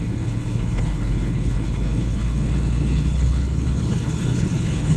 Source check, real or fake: fake